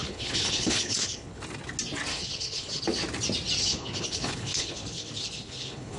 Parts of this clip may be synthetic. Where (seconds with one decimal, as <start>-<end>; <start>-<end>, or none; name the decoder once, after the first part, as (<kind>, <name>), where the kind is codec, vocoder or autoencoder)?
0.0-1.4 (codec, HILCodec); 2.1-2.8; 3.6-6.0

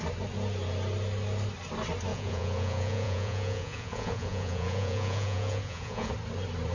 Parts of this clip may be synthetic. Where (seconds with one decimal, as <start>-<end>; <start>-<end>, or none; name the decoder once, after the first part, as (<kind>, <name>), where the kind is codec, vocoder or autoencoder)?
2.1-6.1 (vocoder, Vocos)

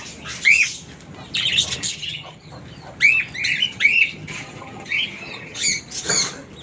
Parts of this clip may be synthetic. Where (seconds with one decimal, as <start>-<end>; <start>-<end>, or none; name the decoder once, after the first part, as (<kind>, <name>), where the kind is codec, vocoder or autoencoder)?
1.9-2.5 (vocoder, HiFi-GAN); 3.7-5.8

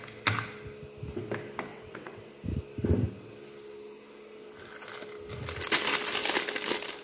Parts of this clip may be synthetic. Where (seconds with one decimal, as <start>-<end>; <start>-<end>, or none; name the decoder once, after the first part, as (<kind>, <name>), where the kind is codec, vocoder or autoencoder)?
1.7-2.3 (vocoder, WaveNeXt)

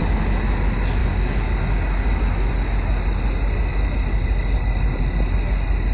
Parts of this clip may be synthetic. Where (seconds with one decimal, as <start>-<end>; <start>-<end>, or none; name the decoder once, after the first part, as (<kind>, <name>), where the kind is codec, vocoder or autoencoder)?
none

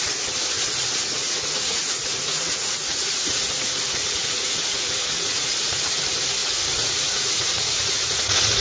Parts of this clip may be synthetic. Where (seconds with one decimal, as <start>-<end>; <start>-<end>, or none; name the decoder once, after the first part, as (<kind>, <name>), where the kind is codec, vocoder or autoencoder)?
1.2-6.0 (vocoder, Vocos); 6.4-8.6

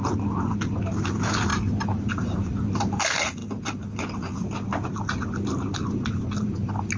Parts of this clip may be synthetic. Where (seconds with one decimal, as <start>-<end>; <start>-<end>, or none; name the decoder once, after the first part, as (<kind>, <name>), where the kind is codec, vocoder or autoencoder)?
none

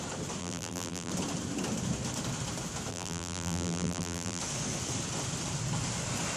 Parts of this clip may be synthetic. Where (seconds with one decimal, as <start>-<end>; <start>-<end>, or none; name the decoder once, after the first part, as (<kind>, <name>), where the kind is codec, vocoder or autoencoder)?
0.4-1.1 (vocoder, BigVGAN v2); 2.9-4.4